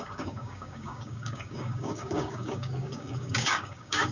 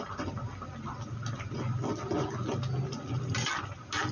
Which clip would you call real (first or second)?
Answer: second